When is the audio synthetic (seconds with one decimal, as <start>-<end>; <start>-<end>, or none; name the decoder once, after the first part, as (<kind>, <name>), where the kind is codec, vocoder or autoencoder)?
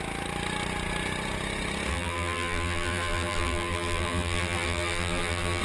1.9-5.6 (vocoder, BigVGAN v2)